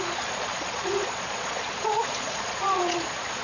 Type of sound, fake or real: fake